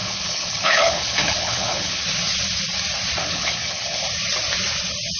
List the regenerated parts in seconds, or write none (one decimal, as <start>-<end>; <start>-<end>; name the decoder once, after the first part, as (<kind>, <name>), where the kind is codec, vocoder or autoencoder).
0.0-2.0 (codec, HILCodec); 3.2-4.0